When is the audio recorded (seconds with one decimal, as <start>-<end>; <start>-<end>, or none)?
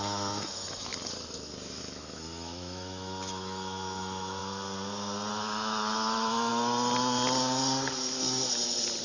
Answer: 0.9-1.8; 4.4-5.3; 6.5-9.0